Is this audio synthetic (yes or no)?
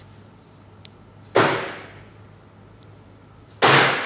no